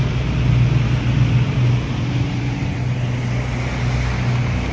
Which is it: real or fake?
real